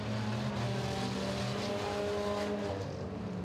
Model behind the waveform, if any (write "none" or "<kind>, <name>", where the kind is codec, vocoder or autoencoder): none